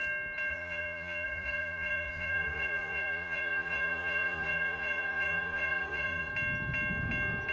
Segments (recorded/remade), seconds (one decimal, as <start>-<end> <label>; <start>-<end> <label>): 0.0-0.5 recorded; 0.5-6.3 remade; 6.3-7.5 recorded